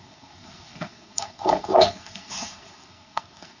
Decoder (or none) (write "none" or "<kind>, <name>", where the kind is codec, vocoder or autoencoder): codec, SNAC